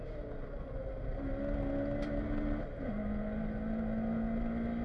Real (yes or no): yes